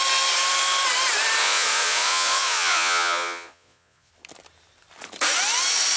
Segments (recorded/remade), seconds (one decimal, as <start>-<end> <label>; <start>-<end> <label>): 0.0-1.4 recorded; 1.4-4.1 remade; 4.1-6.0 recorded